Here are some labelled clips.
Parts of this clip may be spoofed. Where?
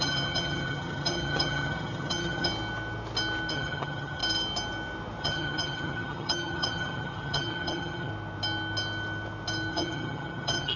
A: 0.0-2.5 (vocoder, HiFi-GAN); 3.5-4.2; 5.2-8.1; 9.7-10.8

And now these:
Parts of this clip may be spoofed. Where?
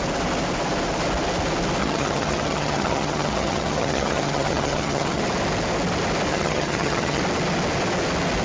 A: 1.8-5.2 (vocoder, HiFi-GAN); 6.3-7.2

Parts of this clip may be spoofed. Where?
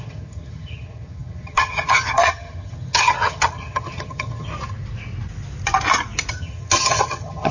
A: 0.0-4.5 (vocoder, HiFi-GAN); 6.3-7.5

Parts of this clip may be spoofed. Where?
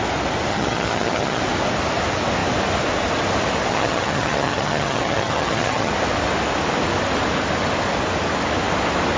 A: 0.5-1.4 (vocoder, HiFi-GAN); 3.7-5.9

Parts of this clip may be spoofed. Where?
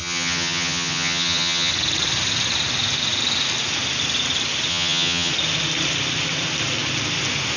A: 0.0-1.7 (vocoder, HiFi-GAN); 4.7-5.3